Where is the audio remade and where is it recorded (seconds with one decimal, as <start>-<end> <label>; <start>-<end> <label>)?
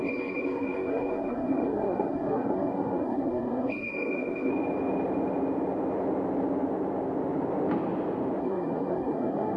0.0-4.5 remade; 4.5-8.4 recorded; 8.4-9.6 remade